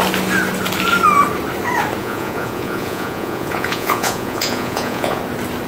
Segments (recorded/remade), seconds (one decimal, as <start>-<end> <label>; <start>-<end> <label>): 0.0-2.0 recorded; 2.0-5.2 remade; 5.2-5.7 recorded